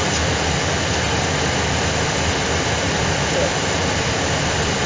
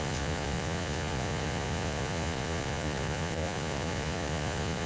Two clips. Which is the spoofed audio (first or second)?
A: second